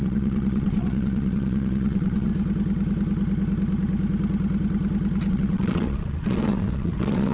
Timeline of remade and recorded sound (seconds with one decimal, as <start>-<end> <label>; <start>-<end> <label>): 0.0-2.3 remade; 2.3-5.3 recorded; 5.3-7.3 remade